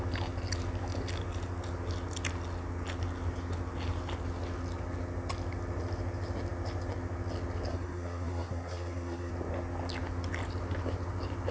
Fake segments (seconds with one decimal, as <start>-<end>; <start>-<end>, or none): 7.7-9.3

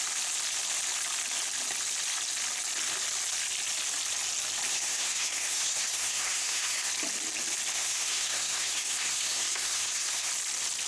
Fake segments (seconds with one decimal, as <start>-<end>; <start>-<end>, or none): 4.7-6.9; 7.7-10.3

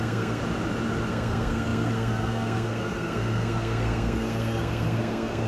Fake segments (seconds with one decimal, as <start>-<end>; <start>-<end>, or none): 0.0-0.4; 1.1-5.5

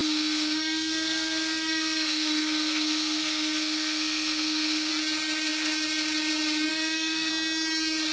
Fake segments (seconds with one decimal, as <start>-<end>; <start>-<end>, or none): 0.0-4.9; 6.7-7.3

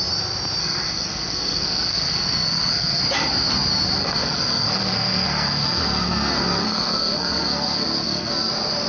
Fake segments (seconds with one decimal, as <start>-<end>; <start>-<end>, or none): 0.6-3.0; 4.0-8.5

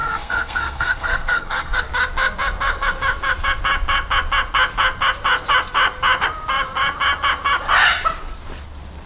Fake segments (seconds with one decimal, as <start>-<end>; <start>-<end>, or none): 0.0-1.8

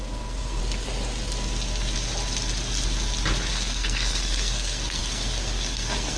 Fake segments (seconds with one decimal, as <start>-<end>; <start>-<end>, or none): 0.0-0.6; 3.5-6.2

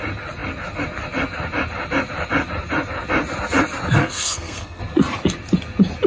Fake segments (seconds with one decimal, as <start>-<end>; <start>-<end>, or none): 4.0-4.8